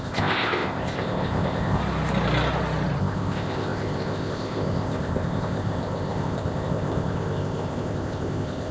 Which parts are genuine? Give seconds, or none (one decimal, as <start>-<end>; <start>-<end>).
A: 1.8-3.0